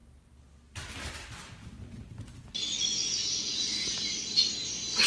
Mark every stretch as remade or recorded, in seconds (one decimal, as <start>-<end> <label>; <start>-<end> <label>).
0.0-5.1 recorded